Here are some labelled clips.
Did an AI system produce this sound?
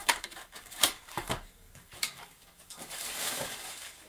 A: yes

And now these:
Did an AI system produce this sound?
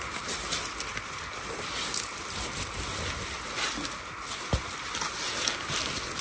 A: no